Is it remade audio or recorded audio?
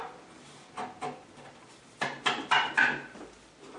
recorded